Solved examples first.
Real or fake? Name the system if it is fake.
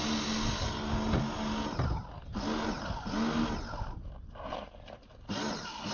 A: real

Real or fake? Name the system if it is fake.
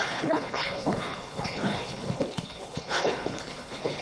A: fake, codec, HILCodec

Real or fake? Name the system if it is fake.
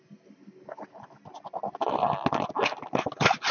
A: real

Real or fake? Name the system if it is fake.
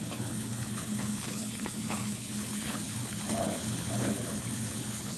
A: fake, codec, HILCodec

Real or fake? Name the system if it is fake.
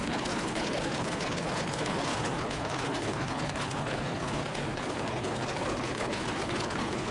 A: fake, codec, HILCodec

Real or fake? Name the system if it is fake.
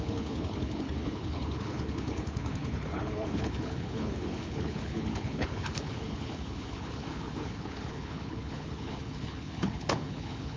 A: fake, codec, HILCodec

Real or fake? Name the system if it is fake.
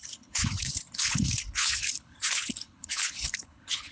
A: fake, codec, HILCodec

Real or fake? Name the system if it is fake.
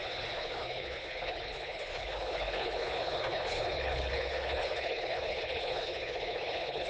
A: fake, codec, HILCodec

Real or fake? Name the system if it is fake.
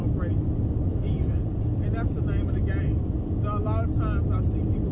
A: real